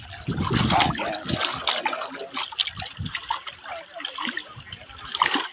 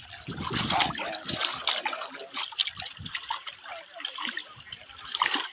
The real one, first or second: first